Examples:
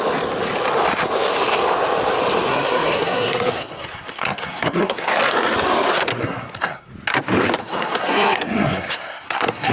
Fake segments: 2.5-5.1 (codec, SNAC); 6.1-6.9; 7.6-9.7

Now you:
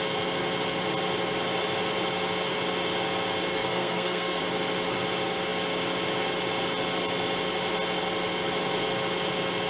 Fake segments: 3.5-4.4 (codec, SNAC)